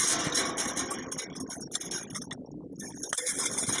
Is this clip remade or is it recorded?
recorded